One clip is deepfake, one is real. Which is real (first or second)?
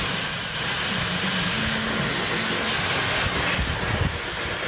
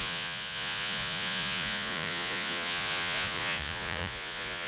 first